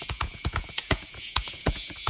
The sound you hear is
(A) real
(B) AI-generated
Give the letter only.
B